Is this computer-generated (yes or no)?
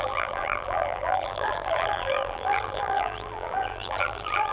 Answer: yes